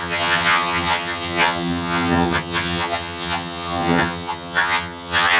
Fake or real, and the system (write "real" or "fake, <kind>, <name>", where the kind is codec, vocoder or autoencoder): fake, vocoder, HiFi-GAN